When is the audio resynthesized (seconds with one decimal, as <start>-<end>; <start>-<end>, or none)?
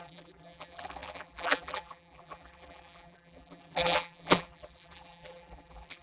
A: 0.0-6.0